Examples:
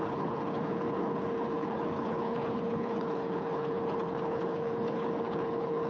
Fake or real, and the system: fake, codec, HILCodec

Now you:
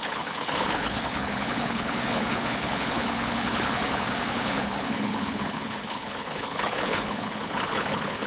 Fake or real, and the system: fake, codec, HILCodec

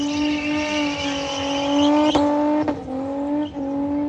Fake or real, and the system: real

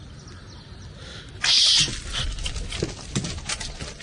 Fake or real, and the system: real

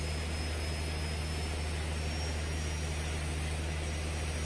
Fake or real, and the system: real